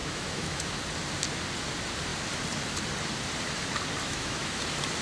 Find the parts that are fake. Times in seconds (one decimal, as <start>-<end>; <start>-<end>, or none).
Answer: 0.0-0.8; 4.0-4.6